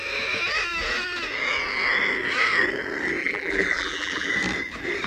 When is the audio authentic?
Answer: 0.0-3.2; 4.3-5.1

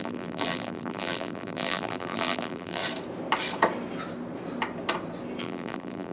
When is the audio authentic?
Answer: 2.8-5.4

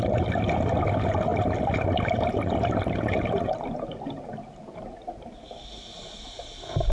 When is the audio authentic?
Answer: 0.0-1.3; 5.4-6.9

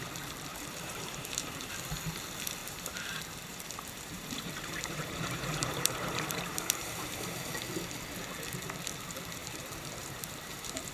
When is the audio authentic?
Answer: 0.0-0.5; 1.7-2.6; 7.4-9.4

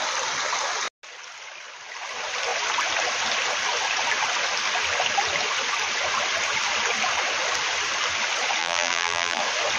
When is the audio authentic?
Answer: 0.0-8.6; 9.4-9.8